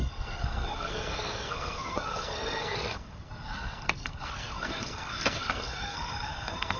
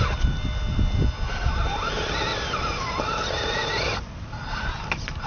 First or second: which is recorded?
second